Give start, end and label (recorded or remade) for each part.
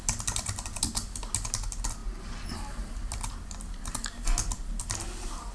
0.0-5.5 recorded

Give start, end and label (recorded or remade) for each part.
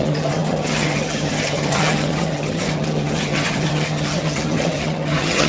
0.0-5.5 remade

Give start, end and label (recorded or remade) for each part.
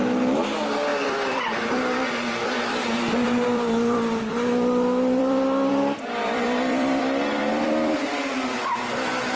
0.0-0.9 recorded; 0.9-5.7 remade; 5.7-6.2 recorded; 6.2-7.0 remade; 7.0-7.4 recorded; 7.4-8.8 remade; 8.8-9.4 recorded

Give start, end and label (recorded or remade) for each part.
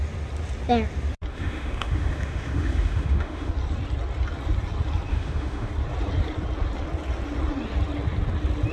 0.0-1.3 recorded; 1.3-3.5 remade; 3.5-5.1 recorded; 5.1-5.7 remade; 5.7-8.7 recorded